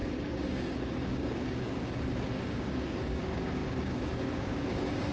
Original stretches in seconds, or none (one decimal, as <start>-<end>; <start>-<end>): none